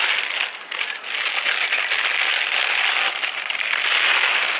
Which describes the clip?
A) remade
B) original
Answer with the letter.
B